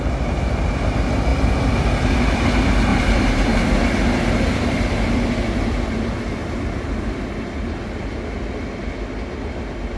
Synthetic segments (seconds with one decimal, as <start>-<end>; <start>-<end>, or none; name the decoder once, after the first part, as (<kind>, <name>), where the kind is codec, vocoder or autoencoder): 2.9-3.7 (vocoder, BigVGAN v2)